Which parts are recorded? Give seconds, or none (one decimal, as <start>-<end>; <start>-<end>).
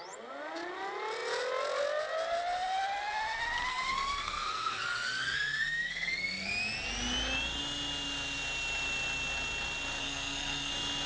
0.0-3.7; 6.5-10.0; 10.7-11.1